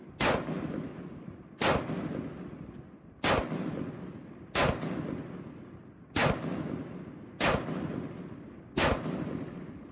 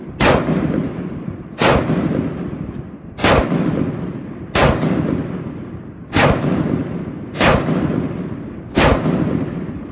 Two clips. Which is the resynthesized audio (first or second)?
second